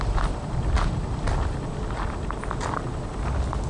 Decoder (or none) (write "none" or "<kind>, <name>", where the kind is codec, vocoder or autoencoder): none